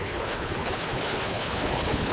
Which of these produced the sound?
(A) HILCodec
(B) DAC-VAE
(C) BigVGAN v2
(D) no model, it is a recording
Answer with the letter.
A